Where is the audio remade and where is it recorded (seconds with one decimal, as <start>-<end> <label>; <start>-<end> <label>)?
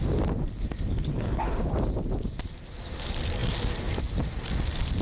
0.0-1.1 recorded; 1.1-1.7 remade; 1.7-5.0 recorded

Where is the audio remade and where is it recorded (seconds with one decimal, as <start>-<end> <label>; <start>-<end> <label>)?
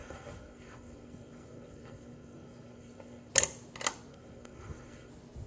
0.0-3.3 remade; 3.3-4.1 recorded; 4.1-5.1 remade; 5.1-5.5 recorded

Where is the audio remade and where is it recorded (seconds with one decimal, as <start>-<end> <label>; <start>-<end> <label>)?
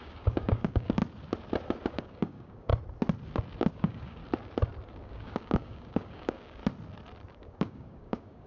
0.0-1.0 remade; 1.0-1.9 recorded; 1.9-2.7 remade; 2.7-3.7 recorded; 3.7-4.2 remade; 4.2-5.0 recorded; 5.0-6.6 remade; 6.6-7.3 recorded; 7.3-8.5 remade